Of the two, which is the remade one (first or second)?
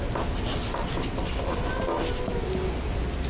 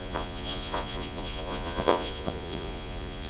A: second